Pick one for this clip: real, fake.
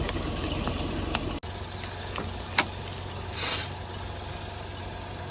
real